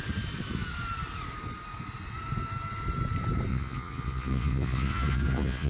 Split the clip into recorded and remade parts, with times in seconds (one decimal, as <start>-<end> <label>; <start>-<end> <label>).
0.0-3.5 recorded; 3.5-5.7 remade